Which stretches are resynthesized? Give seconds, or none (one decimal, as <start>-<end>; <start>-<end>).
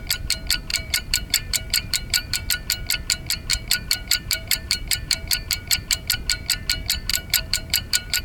0.7-2.5; 3.5-6.1; 7.1-8.2